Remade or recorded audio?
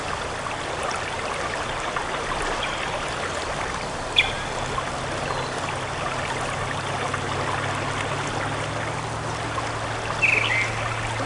recorded